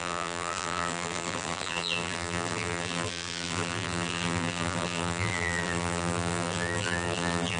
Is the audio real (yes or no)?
no